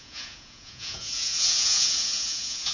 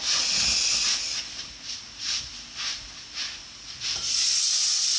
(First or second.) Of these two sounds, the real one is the second